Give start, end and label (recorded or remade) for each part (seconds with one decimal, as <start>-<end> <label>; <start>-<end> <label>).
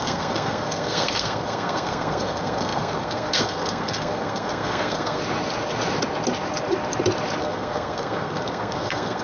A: 0.0-5.2 remade; 5.2-7.4 recorded; 7.4-9.2 remade